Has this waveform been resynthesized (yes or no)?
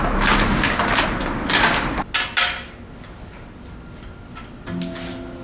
no